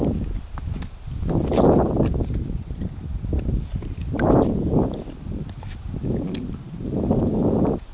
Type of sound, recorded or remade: recorded